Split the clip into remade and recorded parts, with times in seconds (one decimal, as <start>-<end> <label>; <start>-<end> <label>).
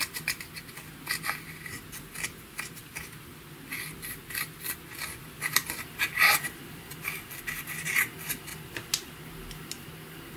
0.0-5.2 recorded; 5.2-6.9 remade; 6.9-10.4 recorded